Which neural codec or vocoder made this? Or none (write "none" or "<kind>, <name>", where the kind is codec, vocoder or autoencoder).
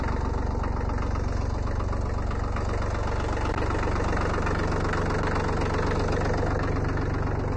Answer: none